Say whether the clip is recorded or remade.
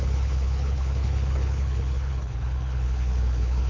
remade